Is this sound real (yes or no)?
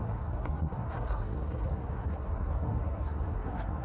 no